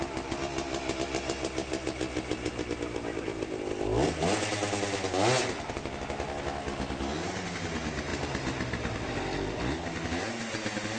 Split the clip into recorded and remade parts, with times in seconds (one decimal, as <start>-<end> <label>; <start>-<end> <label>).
0.0-11.0 recorded